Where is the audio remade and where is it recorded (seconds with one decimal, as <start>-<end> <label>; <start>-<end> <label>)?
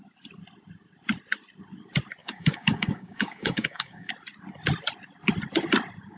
0.0-2.2 recorded; 2.2-4.1 remade; 4.1-6.2 recorded